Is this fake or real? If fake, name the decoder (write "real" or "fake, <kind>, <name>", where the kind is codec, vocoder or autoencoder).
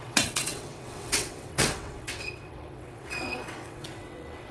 fake, vocoder, WaveNeXt